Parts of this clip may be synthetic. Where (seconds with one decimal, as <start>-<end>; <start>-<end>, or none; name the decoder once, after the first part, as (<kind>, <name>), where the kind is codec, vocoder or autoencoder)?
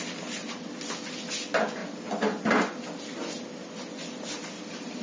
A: none